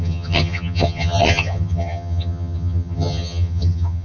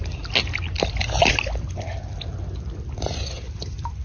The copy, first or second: first